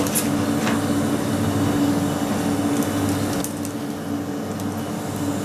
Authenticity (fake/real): real